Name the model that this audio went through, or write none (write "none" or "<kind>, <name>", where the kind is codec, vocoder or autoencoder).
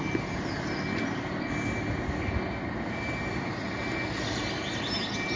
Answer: none